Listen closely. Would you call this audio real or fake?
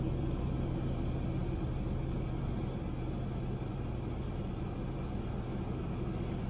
real